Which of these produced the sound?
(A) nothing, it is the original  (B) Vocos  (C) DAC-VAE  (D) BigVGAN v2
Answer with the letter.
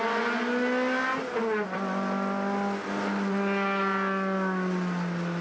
A